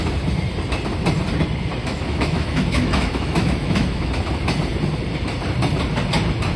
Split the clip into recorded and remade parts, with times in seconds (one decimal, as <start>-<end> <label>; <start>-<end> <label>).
0.0-1.8 recorded; 1.8-4.1 remade; 4.1-6.6 recorded